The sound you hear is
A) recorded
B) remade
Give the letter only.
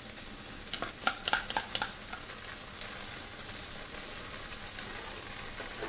A